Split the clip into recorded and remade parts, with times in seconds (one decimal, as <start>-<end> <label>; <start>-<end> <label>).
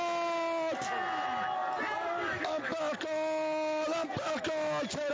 0.0-5.1 recorded